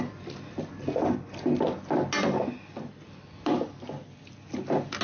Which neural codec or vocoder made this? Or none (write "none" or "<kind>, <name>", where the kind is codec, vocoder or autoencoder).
none